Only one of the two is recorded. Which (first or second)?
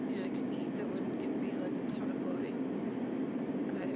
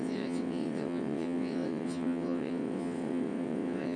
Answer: first